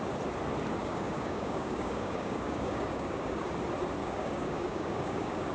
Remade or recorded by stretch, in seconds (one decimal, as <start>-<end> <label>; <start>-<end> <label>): 0.0-0.8 recorded; 0.8-3.5 remade; 3.5-4.0 recorded; 4.0-5.5 remade